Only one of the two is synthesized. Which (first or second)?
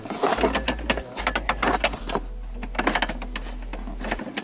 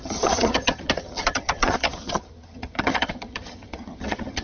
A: second